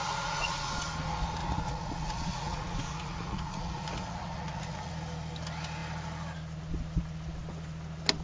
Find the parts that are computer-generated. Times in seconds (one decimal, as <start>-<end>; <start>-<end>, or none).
0.0-0.7; 1.4-4.9